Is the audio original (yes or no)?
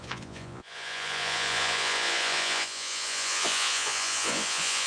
no